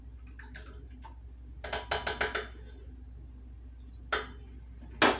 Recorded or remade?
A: recorded